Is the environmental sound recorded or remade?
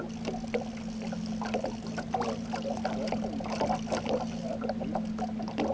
recorded